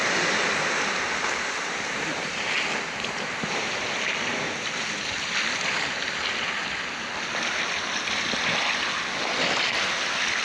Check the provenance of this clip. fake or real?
real